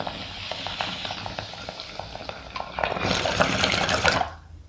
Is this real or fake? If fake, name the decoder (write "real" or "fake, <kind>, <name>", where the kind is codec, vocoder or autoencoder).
real